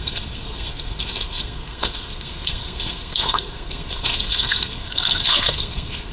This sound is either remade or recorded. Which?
remade